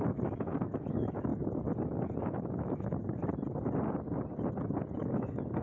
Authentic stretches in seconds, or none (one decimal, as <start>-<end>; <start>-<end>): 1.3-2.2; 3.2-5.0